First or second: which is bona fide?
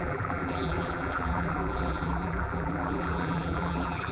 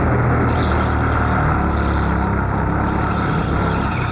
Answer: second